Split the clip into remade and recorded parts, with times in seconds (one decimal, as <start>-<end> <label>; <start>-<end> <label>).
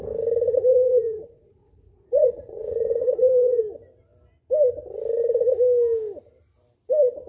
0.0-0.7 recorded; 0.7-3.6 remade; 3.6-7.3 recorded